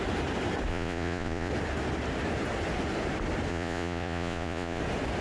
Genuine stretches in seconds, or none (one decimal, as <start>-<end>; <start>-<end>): 0.0-0.7; 1.5-3.5; 4.8-5.2